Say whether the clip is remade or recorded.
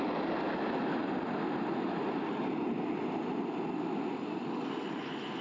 recorded